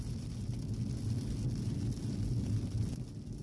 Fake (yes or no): no